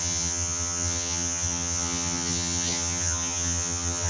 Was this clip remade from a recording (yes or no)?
yes